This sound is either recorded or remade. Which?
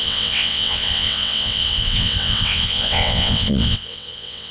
remade